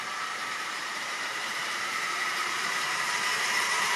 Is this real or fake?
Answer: fake